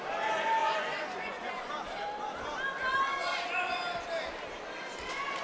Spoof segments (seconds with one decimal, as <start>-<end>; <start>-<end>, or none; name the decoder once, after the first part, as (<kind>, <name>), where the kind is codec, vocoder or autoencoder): 0.6-1.7 (vocoder, Vocos); 3.1-3.8